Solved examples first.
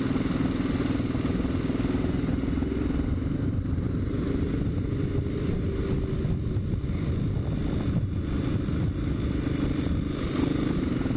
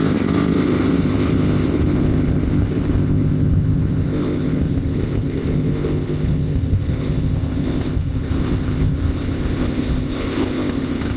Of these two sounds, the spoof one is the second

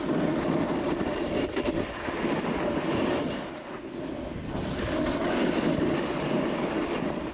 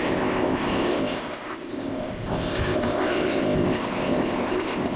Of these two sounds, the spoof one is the second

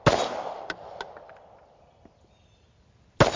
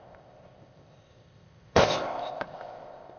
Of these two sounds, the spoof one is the second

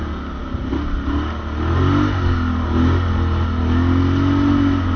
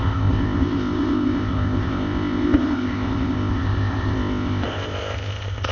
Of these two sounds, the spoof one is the second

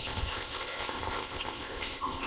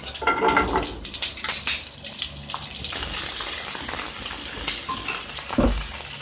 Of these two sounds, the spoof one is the first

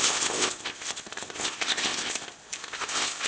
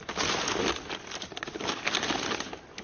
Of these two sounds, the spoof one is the first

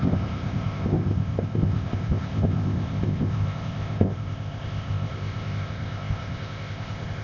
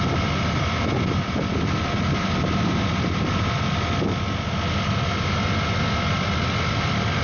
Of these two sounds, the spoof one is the first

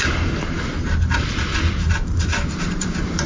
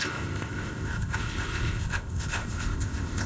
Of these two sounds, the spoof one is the second